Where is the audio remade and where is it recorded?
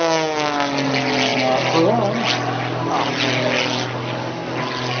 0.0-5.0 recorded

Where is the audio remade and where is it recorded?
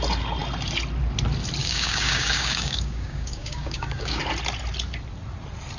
0.0-1.6 recorded; 1.6-4.2 remade; 4.2-5.8 recorded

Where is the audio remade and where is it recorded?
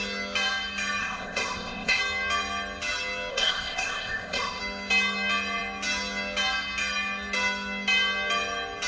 0.0-1.0 recorded; 1.0-2.0 remade; 2.0-3.3 recorded; 3.3-4.6 remade; 4.6-8.9 recorded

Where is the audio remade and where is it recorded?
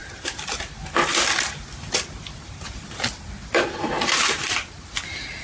0.0-5.4 recorded